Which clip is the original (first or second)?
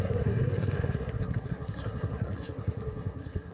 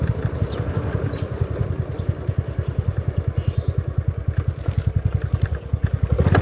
second